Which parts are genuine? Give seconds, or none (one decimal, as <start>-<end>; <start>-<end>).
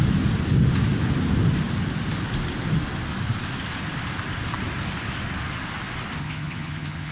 0.0-6.2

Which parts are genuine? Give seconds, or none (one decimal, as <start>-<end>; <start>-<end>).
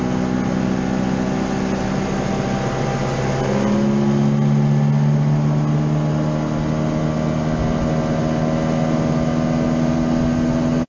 0.0-10.9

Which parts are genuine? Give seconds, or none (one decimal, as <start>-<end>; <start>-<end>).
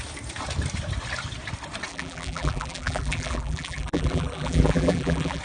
0.0-1.9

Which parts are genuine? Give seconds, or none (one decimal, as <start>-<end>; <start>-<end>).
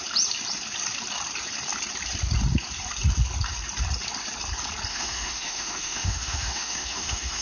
0.0-4.9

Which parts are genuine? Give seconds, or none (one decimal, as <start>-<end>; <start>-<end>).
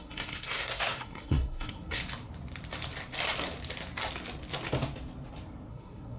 2.0-5.7